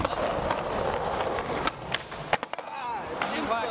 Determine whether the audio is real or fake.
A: real